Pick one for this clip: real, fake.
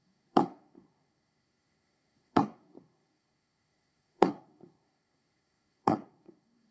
fake